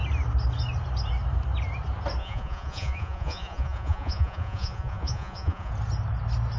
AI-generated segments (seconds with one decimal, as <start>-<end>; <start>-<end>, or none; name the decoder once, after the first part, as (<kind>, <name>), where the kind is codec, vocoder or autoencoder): 2.2-5.7 (vocoder, Vocos)